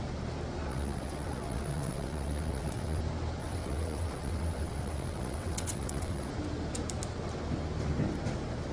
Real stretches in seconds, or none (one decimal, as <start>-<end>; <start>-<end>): 0.0-0.7; 3.0-3.4; 6.3-8.7